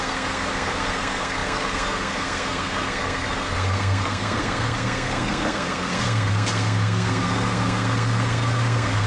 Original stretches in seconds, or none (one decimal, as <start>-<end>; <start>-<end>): none